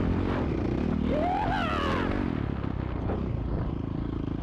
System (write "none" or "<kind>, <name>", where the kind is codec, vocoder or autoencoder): none